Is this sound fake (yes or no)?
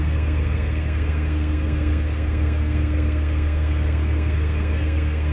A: yes